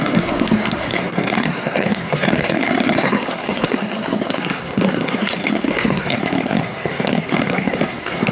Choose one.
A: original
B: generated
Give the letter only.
B